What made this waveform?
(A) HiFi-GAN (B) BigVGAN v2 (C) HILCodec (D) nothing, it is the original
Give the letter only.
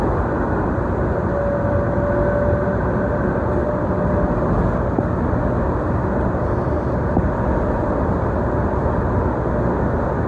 D